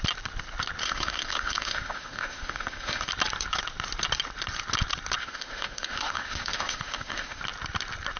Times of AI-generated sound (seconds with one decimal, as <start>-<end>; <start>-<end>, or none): 0.8-3.1; 5.2-7.4